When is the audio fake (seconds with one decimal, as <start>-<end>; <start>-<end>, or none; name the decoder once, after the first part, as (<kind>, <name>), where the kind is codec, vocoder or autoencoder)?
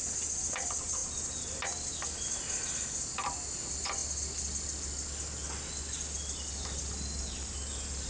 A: none